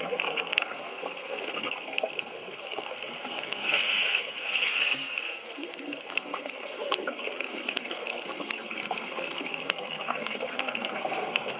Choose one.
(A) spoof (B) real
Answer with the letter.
A